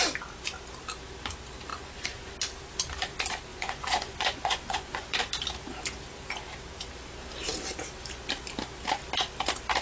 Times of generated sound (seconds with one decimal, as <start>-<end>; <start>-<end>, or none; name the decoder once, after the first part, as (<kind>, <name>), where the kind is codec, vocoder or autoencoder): 1.7-2.3 (vocoder, Vocos); 3.5-5.2